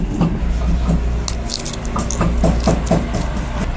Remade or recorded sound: recorded